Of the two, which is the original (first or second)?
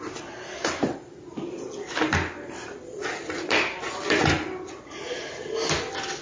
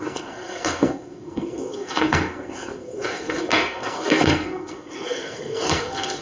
first